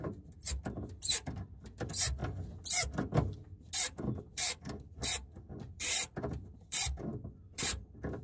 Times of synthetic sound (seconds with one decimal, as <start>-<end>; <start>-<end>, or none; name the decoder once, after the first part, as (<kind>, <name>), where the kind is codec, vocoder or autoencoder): 0.0-2.2 (vocoder, BigVGAN v2); 4.2-8.2